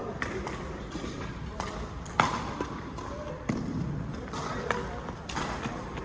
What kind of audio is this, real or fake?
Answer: fake